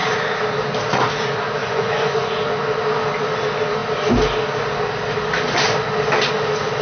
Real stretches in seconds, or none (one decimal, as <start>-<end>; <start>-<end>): 0.0-1.6; 2.4-6.8